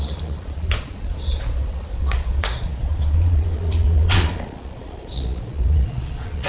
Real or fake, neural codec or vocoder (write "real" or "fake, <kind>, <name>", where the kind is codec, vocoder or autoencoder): fake, vocoder, Vocos